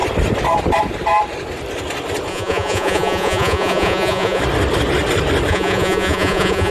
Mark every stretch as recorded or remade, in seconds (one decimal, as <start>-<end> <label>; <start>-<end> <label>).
0.0-2.3 recorded; 2.3-4.4 remade; 4.4-5.5 recorded; 5.5-6.7 remade

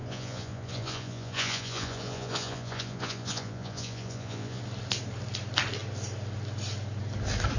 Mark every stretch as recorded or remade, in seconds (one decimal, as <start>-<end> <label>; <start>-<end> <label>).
0.0-4.6 remade; 4.6-7.6 recorded

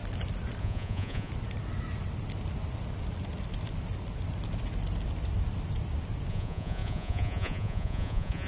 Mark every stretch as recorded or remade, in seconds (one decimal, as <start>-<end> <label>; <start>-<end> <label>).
0.0-0.6 recorded; 0.6-1.3 remade; 1.3-6.3 recorded; 6.3-8.5 remade

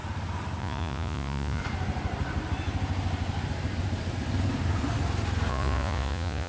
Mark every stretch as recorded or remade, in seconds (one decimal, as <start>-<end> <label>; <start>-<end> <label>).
0.0-0.6 recorded; 0.6-1.6 remade; 1.6-5.5 recorded; 5.5-6.5 remade

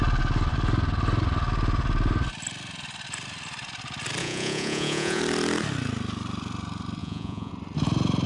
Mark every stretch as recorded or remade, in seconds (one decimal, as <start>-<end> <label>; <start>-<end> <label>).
0.0-4.2 recorded; 4.2-5.2 remade; 5.2-7.0 recorded; 7.0-7.5 remade; 7.5-8.3 recorded

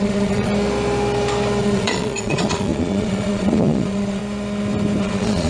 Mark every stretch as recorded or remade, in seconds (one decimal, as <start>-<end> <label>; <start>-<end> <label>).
0.0-0.5 remade; 0.5-1.6 recorded; 1.6-4.2 remade; 4.2-5.0 recorded; 5.0-5.5 remade